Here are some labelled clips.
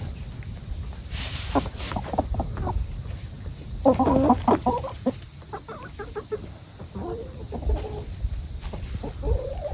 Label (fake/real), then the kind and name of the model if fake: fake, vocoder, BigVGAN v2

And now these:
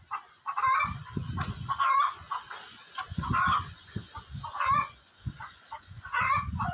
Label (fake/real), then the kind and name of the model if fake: fake, vocoder, Vocos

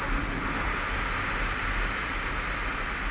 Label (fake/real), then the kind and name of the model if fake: real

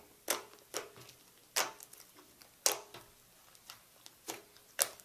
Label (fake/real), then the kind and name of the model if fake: real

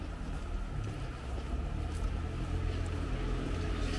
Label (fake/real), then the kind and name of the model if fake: real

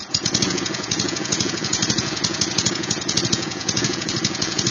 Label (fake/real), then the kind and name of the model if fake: fake, vocoder, Vocos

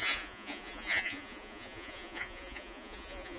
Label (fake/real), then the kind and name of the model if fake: fake, vocoder, Vocos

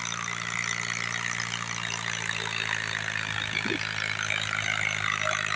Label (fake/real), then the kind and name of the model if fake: real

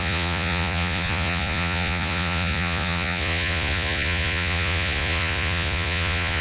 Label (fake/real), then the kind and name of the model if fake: fake, vocoder, Vocos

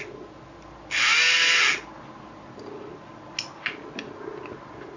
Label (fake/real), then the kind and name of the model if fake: real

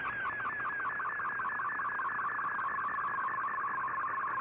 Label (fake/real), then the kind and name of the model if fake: real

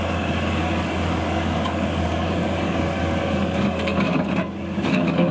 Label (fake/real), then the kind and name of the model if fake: fake, codec, DAC